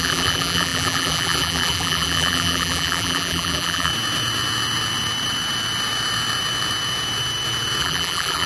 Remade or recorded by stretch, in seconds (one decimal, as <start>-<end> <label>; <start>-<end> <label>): 0.0-3.9 remade; 3.9-7.8 recorded; 7.8-8.5 remade